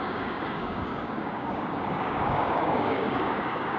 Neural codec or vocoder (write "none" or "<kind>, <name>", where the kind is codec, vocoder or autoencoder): codec, DAC